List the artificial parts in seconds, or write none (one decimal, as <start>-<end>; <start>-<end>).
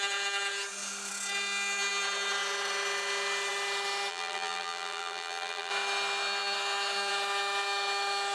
4.1-5.7